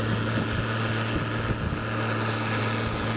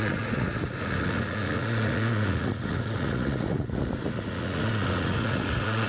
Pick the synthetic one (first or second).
second